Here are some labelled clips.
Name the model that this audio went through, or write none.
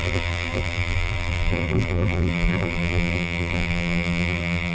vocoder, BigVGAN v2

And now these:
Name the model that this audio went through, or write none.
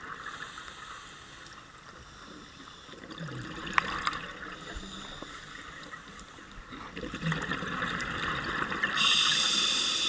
none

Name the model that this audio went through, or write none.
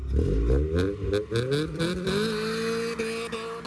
none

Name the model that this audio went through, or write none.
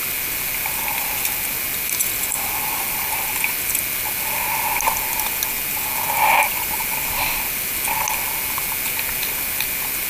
none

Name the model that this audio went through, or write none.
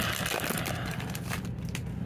none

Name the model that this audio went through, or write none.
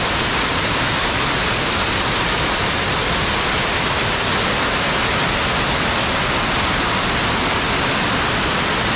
none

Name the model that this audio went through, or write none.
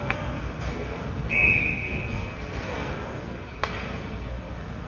codec, SNAC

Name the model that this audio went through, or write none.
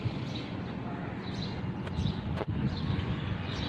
vocoder, Vocos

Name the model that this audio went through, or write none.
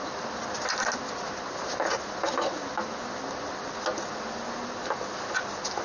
none